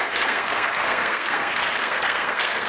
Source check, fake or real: fake